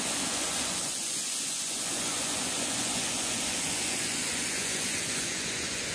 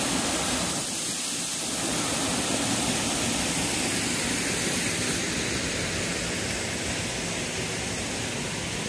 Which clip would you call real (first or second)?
second